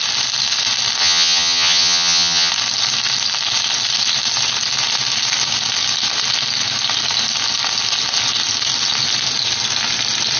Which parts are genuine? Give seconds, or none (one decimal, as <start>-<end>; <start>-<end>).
0.0-1.0; 2.5-10.4

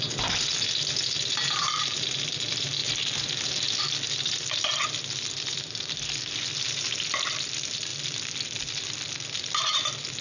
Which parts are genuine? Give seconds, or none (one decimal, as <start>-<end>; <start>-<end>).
0.0-10.2

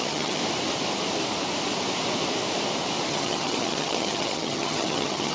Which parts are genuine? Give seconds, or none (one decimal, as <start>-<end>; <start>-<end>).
0.4-3.1

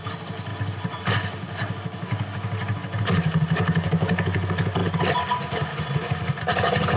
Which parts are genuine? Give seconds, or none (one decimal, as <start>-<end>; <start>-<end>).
0.0-7.0